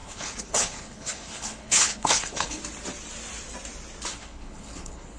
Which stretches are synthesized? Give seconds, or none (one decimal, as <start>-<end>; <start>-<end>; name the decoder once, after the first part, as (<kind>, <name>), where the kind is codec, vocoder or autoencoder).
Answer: 0.0-2.6 (codec, HILCodec); 4.1-5.2